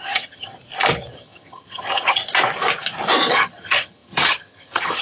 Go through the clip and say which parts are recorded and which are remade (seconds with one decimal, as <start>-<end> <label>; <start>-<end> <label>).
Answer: 0.0-0.5 remade; 0.5-1.1 recorded; 1.1-2.2 remade; 2.2-3.3 recorded; 3.3-5.0 remade